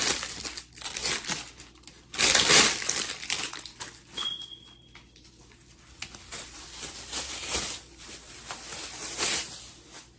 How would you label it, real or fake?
real